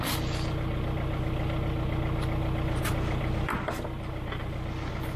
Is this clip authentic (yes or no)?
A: yes